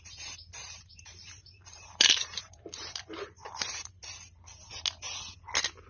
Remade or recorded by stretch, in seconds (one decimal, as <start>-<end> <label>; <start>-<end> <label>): 0.0-0.9 recorded; 0.9-4.0 remade; 4.0-5.9 recorded